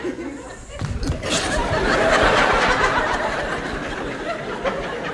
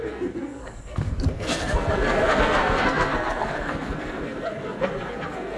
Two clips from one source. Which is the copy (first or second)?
second